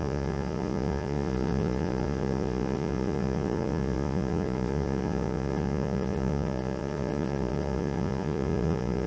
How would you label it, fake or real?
fake